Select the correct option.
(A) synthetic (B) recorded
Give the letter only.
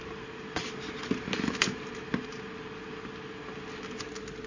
B